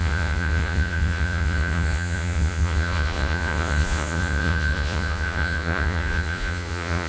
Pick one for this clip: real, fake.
fake